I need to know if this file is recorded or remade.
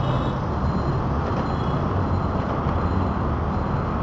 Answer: recorded